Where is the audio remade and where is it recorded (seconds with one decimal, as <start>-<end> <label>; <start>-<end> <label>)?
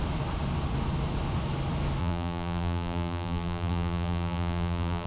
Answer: 0.0-2.0 recorded; 2.0-5.1 remade